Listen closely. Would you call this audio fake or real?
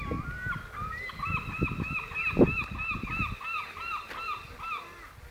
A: real